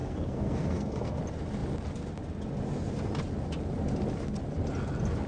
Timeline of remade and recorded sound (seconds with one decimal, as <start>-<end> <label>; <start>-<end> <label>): 0.0-1.2 remade; 1.2-5.3 recorded